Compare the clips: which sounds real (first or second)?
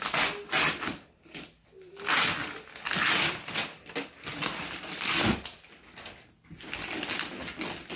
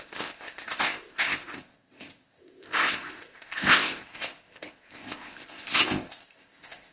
first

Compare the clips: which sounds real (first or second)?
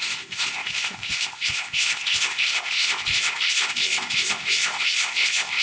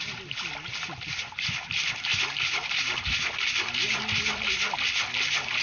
second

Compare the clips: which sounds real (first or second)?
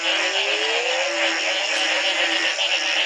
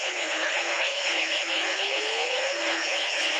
first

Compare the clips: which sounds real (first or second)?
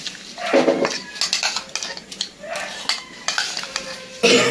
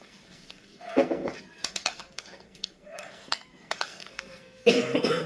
first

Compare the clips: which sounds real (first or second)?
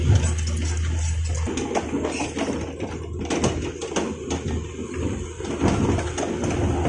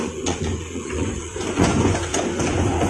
first